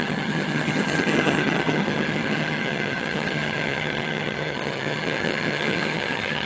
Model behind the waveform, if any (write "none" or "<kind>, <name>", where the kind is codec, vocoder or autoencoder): vocoder, HiFi-GAN